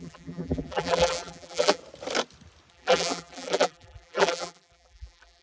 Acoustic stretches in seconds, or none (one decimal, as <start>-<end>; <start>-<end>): 1.8-2.7